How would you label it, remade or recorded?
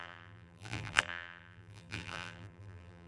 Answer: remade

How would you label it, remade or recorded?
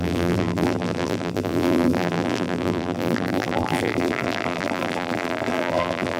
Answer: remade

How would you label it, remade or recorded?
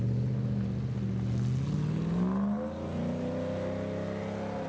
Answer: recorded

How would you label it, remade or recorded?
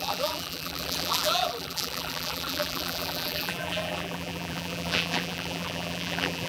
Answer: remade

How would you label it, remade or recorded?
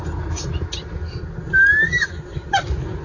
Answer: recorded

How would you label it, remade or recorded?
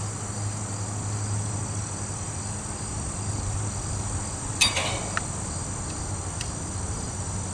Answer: recorded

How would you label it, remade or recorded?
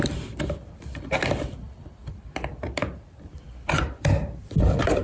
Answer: remade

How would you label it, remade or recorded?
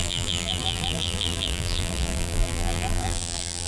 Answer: remade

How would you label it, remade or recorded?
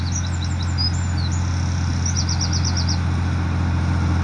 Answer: recorded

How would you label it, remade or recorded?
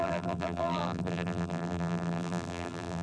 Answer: remade